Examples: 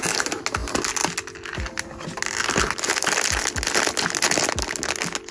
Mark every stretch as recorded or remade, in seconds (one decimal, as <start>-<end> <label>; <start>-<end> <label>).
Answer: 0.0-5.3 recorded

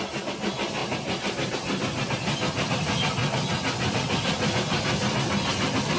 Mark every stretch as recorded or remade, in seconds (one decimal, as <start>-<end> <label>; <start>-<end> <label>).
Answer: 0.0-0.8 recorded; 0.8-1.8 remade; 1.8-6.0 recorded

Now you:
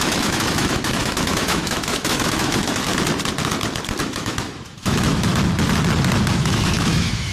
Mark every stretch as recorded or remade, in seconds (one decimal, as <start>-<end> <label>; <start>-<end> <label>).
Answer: 0.0-2.9 remade; 2.9-4.0 recorded; 4.0-5.3 remade; 5.3-6.3 recorded; 6.3-7.3 remade

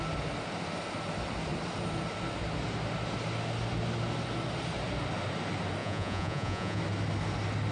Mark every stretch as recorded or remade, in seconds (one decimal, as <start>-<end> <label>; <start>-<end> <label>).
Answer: 0.0-5.8 recorded; 5.8-6.8 remade; 6.8-7.7 recorded

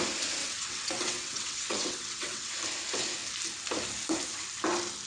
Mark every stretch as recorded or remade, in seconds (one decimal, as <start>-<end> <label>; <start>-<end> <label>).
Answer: 0.0-0.4 recorded; 0.4-2.5 remade; 2.5-5.1 recorded

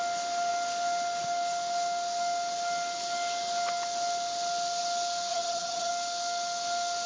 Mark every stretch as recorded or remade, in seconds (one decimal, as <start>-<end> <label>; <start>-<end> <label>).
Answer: 0.0-5.3 recorded; 5.3-5.9 remade; 5.9-7.1 recorded

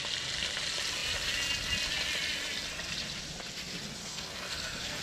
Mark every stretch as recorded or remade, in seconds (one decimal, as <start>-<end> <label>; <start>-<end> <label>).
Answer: 0.0-4.0 recorded; 4.0-5.0 remade

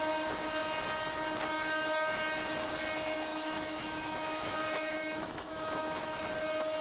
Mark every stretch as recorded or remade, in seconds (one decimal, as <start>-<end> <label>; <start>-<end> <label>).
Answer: 0.0-3.3 recorded; 3.3-6.2 remade; 6.2-6.8 recorded